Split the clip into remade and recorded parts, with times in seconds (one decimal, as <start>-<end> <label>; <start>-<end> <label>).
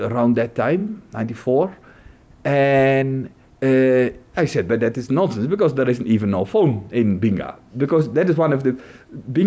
0.0-9.5 recorded